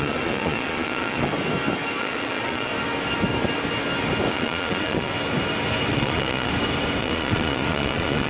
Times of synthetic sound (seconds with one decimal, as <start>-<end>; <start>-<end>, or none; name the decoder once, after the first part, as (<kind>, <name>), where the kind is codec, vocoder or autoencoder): 0.0-1.3 (vocoder, Vocos); 2.0-2.7; 4.3-5.1; 5.9-6.5; 7.0-8.3